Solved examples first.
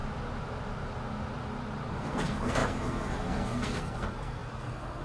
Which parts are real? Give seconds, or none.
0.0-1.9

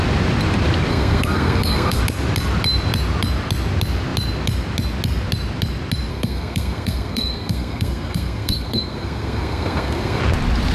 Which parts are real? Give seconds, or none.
0.0-0.9; 2.0-6.1; 10.2-10.7

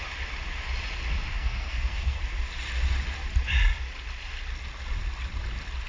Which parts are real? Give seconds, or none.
0.0-1.3; 2.2-5.9